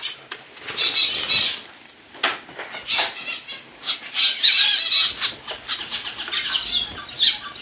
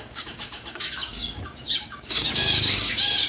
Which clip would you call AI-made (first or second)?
second